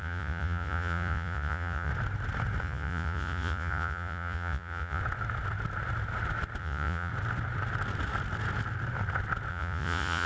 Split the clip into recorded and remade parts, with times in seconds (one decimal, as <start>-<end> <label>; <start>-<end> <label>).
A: 0.0-1.9 remade; 1.9-2.6 recorded; 2.6-5.0 remade; 5.0-6.6 recorded; 6.6-7.1 remade; 7.1-9.5 recorded; 9.5-10.3 remade